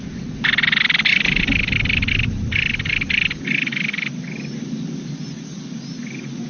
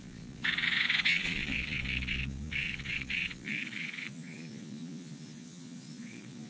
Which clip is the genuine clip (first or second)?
first